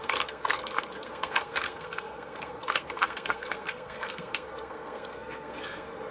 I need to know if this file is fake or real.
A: fake